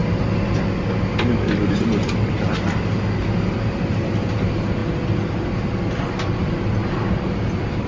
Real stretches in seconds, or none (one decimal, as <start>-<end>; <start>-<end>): 0.0-7.9